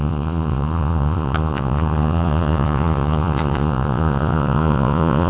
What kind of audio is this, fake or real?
fake